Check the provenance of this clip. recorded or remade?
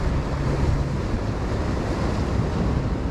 recorded